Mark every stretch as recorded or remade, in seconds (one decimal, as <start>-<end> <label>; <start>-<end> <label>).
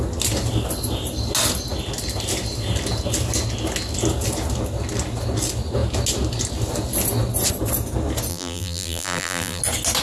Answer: 0.0-8.3 recorded; 8.3-9.6 remade; 9.6-10.0 recorded